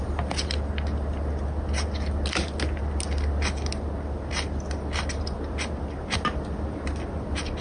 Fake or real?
real